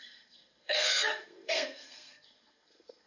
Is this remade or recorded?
remade